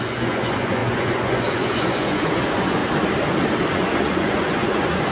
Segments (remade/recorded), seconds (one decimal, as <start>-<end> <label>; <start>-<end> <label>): 0.0-2.8 remade; 2.8-3.7 recorded; 3.7-5.1 remade